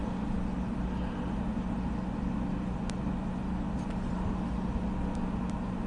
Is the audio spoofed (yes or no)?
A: no